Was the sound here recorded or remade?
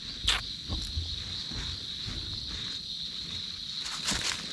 recorded